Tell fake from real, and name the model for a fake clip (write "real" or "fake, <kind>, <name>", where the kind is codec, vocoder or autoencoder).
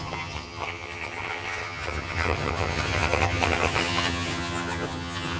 fake, vocoder, HiFi-GAN